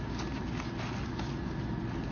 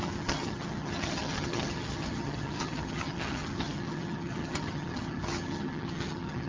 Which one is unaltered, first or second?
first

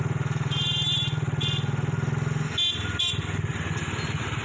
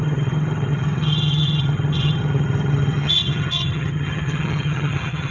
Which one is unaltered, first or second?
first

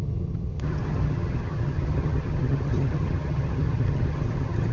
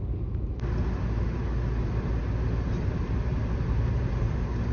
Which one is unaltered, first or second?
second